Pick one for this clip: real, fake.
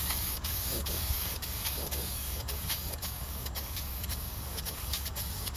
fake